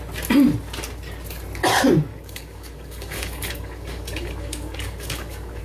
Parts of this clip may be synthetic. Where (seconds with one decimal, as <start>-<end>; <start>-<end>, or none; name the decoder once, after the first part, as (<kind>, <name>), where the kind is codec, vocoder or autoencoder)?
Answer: 2.1-5.6 (codec, DAC)

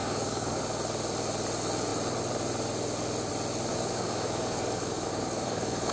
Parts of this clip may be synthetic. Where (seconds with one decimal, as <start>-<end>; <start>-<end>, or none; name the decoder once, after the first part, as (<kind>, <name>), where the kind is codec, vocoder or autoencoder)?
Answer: 0.0-0.6 (codec, DAC); 3.7-5.9